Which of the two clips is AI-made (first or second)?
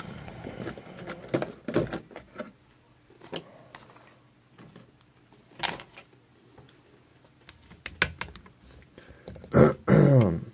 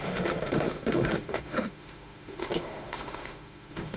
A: second